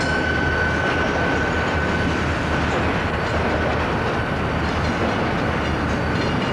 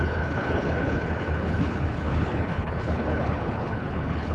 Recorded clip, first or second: first